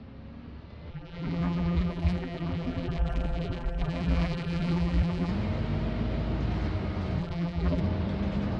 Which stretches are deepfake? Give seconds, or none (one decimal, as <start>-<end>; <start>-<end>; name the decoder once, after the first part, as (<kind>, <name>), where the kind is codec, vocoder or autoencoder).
0.9-5.3 (vocoder, BigVGAN v2); 7.2-7.8